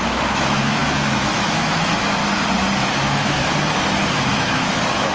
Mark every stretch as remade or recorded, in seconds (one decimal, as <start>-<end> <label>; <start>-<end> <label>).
0.0-2.2 remade; 2.2-2.9 recorded; 2.9-3.4 remade; 3.4-4.2 recorded; 4.2-5.1 remade